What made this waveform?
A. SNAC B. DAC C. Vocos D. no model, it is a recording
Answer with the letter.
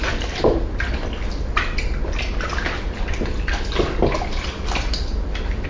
D